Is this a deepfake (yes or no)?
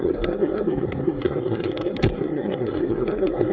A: yes